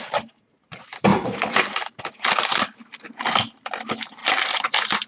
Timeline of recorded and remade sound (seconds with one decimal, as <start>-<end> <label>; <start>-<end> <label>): 0.0-5.1 recorded